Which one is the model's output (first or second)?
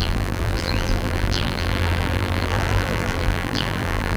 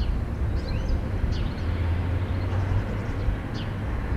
first